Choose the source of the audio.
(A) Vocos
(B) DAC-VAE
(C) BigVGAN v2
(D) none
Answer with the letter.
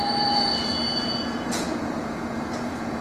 A